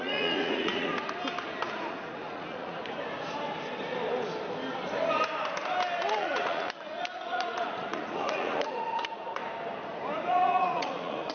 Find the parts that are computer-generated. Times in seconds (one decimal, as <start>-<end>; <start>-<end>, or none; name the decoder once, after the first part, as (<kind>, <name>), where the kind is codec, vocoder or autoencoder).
0.0-0.9 (vocoder, Vocos); 1.7-2.8; 6.1-9.4; 10.3-11.3